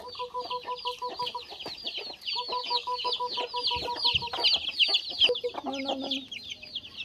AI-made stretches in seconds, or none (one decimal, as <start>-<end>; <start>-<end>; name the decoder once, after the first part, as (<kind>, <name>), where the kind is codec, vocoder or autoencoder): 2.6-3.1 (codec, DAC)